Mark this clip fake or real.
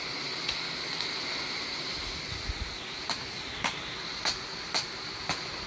real